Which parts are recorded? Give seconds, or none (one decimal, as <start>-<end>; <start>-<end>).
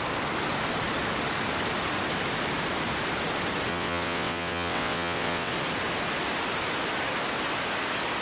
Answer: 0.0-3.7; 5.5-8.2